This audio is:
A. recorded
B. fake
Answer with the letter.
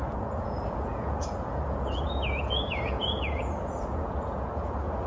B